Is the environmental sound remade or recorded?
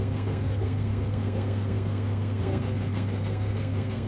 remade